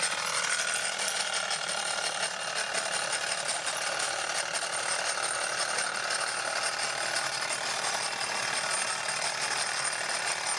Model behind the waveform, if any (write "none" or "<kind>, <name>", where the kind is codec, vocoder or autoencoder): none